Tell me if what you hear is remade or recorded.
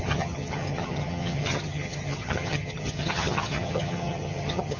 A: remade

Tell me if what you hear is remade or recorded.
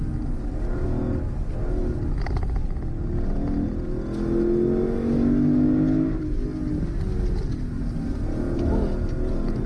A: recorded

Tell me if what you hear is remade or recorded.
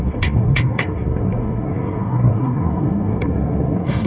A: remade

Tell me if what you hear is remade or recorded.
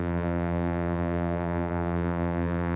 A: remade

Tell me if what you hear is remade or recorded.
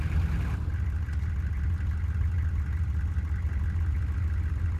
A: recorded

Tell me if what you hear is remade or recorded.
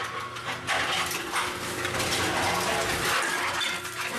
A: recorded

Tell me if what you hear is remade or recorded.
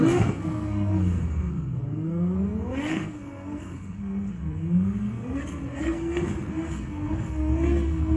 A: remade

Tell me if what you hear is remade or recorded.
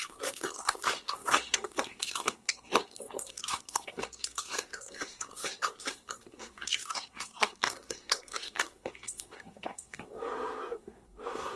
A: remade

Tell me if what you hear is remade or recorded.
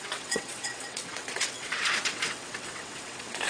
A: remade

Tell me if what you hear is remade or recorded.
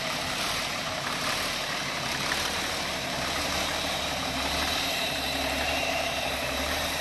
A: remade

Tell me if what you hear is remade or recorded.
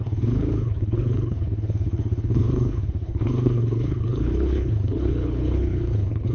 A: remade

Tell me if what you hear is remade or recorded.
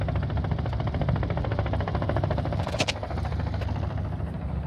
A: recorded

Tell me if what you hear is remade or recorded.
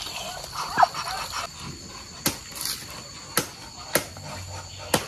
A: recorded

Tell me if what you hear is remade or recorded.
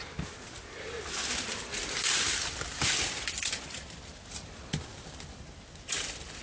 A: recorded